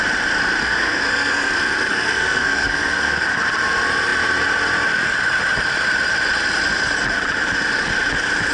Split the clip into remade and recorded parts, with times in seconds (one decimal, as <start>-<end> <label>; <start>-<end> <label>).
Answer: 0.0-0.6 recorded; 0.6-1.5 remade; 1.5-1.9 recorded; 1.9-3.4 remade; 3.4-8.5 recorded